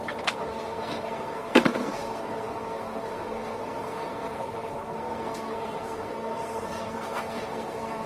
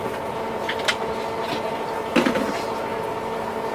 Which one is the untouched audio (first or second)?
second